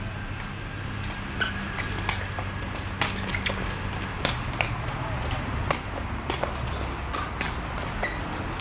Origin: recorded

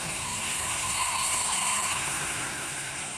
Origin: remade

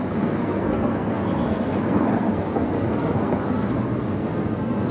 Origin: remade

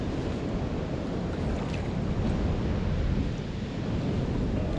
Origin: recorded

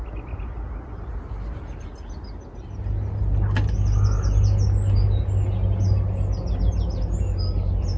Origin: recorded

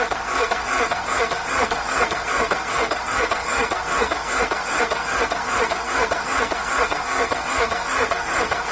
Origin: remade